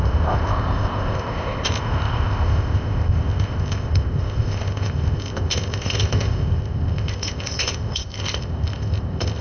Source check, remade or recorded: remade